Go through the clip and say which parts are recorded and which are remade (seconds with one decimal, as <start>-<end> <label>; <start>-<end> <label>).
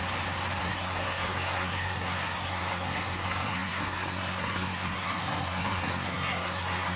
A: 0.0-0.6 recorded; 0.6-7.0 remade